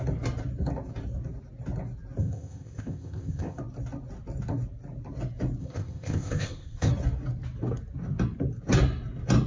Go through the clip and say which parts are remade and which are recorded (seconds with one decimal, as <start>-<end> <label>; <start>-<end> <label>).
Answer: 0.0-2.2 recorded; 2.2-3.6 remade; 3.6-5.6 recorded; 5.6-6.9 remade; 6.9-9.5 recorded